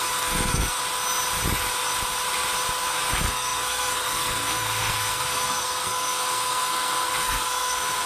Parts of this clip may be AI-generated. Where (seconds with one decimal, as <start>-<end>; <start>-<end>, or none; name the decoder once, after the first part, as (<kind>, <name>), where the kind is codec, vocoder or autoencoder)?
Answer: 0.0-0.8 (codec, SNAC); 3.1-8.1